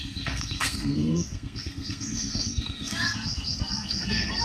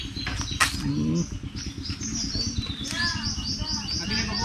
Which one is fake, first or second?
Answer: first